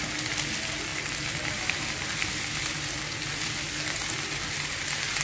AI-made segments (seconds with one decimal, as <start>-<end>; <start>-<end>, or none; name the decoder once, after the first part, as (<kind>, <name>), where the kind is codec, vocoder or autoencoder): none